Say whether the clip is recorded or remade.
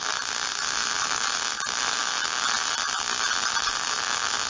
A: recorded